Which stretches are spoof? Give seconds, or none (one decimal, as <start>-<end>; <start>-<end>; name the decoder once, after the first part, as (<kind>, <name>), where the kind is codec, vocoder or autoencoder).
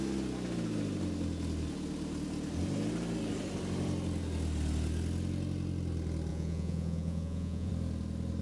6.3-7.7 (vocoder, Vocos)